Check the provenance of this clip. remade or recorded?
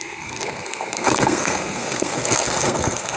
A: remade